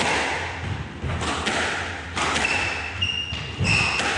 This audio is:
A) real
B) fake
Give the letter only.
A